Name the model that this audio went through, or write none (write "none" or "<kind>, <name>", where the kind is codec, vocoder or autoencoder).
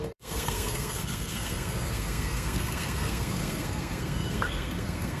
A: codec, SNAC